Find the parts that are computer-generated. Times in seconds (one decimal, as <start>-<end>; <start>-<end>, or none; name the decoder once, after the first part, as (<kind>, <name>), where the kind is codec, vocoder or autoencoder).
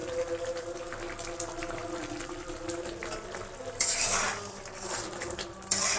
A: none